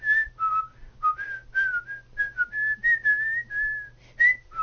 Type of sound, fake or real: real